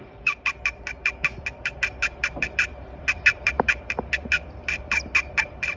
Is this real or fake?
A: fake